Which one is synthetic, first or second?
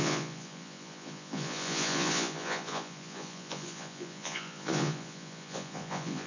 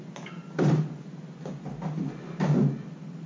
first